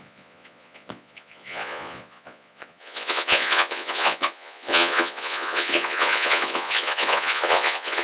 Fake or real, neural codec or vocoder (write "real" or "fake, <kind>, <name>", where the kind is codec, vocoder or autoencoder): fake, vocoder, Vocos